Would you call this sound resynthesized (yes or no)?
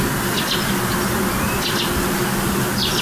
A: yes